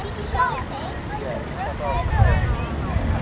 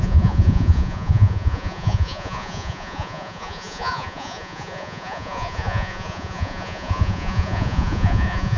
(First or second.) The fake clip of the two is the second